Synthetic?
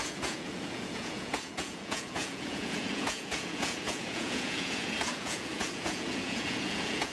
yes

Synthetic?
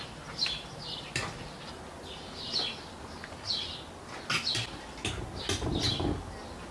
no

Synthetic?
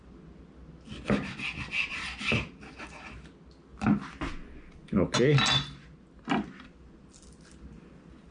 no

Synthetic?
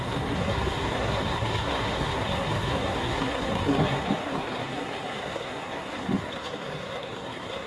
yes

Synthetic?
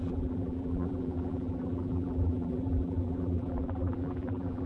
yes